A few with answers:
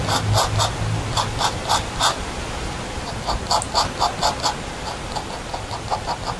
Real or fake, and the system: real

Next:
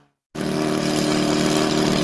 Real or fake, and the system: real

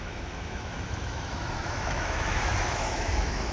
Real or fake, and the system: fake, autoencoder, DAC-VAE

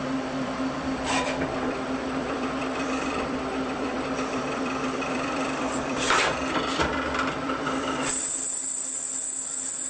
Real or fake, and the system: fake, vocoder, BigVGAN v2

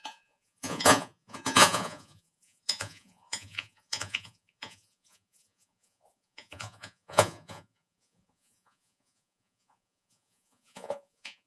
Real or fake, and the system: fake, vocoder, Vocos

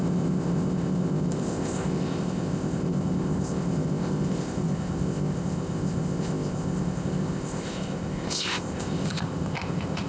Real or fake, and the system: fake, codec, ZipCodec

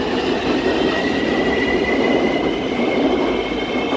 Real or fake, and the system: real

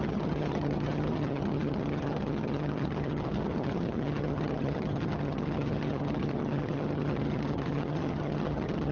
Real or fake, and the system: fake, vocoder, HiFi-GAN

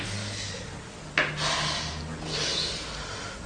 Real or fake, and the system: real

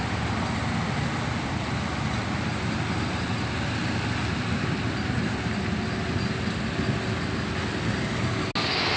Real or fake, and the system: real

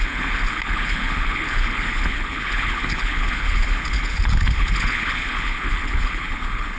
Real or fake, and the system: fake, codec, HILCodec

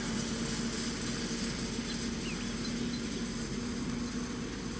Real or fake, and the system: real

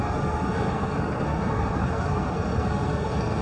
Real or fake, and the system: fake, codec, SNAC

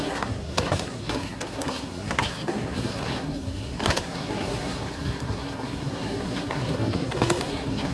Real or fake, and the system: fake, codec, SNAC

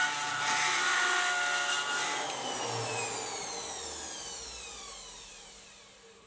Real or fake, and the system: real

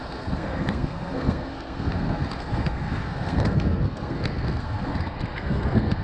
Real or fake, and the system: fake, codec, SNAC